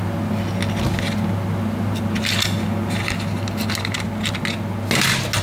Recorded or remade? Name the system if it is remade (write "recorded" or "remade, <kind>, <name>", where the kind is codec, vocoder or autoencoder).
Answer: recorded